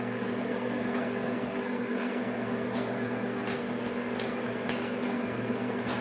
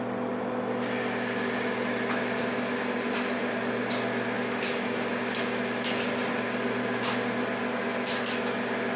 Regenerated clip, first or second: first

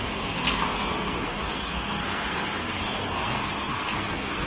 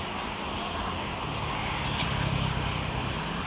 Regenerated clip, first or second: first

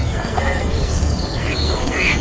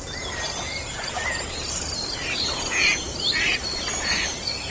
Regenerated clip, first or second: first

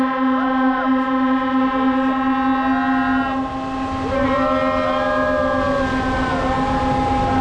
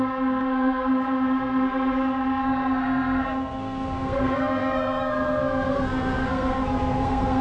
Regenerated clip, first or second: second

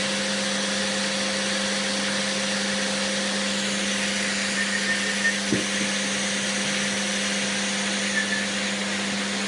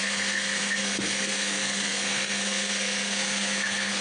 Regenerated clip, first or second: second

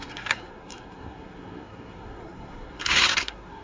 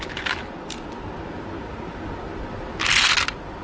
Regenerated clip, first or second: first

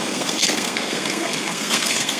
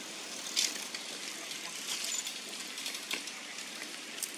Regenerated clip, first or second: first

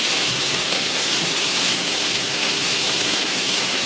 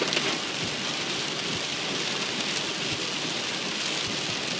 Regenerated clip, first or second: first